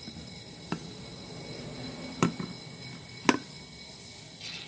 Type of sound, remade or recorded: recorded